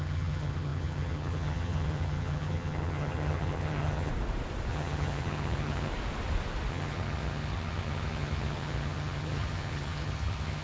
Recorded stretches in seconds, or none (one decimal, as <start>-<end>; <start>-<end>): 4.1-4.7; 5.9-6.7

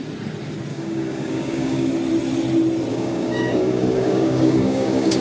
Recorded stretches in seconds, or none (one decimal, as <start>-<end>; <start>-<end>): 0.0-0.7; 1.9-2.9